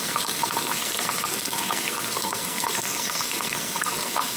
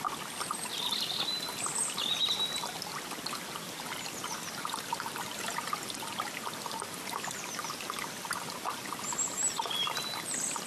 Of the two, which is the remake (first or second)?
first